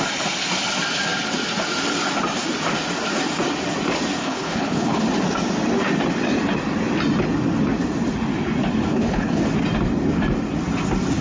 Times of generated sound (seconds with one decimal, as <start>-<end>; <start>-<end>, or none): 4.2-5.0; 8.9-9.4

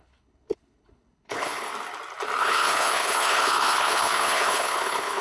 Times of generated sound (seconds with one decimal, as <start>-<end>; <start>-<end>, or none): 0.0-1.7; 2.4-5.2

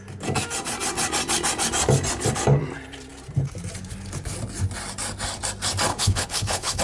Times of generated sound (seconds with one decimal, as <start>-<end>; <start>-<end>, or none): 5.9-6.8